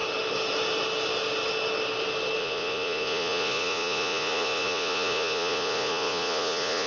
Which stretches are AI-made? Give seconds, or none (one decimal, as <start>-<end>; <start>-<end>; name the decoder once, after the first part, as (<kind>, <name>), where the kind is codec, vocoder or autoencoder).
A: 2.4-6.9 (vocoder, Vocos)